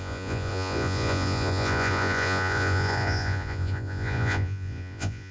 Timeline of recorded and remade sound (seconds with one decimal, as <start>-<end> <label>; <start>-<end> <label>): 0.0-5.3 remade